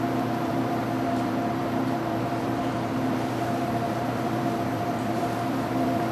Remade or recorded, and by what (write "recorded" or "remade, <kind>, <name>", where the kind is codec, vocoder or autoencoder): remade, vocoder, BigVGAN v2